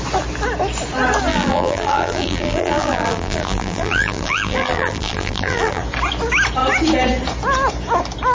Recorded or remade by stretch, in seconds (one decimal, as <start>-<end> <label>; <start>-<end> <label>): 0.0-1.3 recorded; 1.3-5.8 remade; 5.8-8.3 recorded

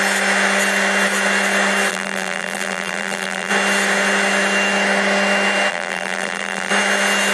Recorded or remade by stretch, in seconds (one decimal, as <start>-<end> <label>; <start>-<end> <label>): 0.0-1.9 recorded; 1.9-3.5 remade; 3.5-5.7 recorded; 5.7-6.7 remade; 6.7-7.3 recorded